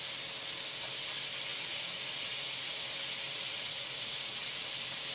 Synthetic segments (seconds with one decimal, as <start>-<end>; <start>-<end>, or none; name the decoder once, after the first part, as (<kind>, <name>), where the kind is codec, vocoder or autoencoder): 1.5-2.8 (vocoder, Vocos); 3.3-4.5